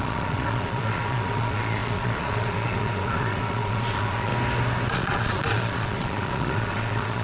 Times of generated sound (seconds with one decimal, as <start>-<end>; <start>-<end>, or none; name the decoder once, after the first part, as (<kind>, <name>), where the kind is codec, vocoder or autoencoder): 0.0-4.3 (vocoder, Vocos); 4.9-7.2